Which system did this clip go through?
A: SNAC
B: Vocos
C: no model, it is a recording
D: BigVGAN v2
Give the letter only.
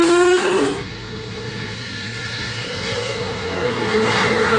A